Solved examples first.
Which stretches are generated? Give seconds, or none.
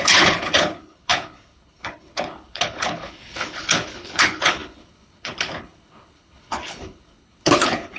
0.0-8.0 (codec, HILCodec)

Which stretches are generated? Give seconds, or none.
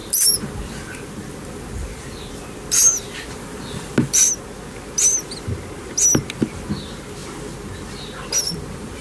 0.0-4.3 (vocoder, BigVGAN v2)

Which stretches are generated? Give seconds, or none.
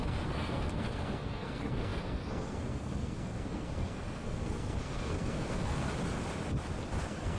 0.0-5.9 (codec, SNAC); 7.0-7.4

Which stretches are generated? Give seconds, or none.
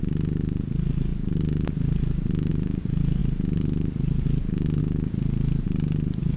none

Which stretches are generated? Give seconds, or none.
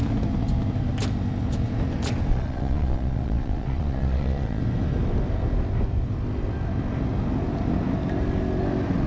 2.3-4.6 (vocoder, Vocos)